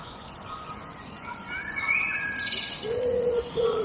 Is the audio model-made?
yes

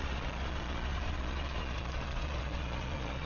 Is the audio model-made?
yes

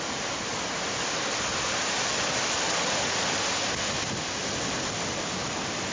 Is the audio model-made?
yes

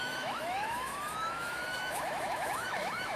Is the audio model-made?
yes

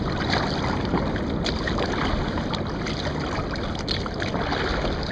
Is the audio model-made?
no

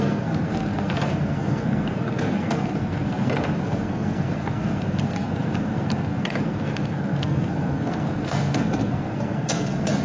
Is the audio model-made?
yes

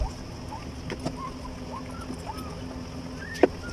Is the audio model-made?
no